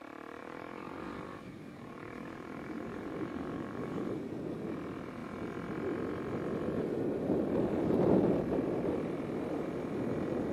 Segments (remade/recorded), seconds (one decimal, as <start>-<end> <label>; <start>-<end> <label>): 0.0-0.4 recorded; 0.4-4.0 remade; 4.0-10.5 recorded